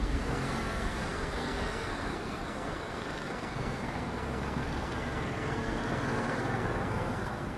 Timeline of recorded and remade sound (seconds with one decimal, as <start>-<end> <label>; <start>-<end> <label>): 0.0-7.6 remade